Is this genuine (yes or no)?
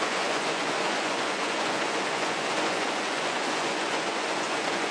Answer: no